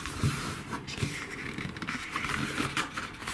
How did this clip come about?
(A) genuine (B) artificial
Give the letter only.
B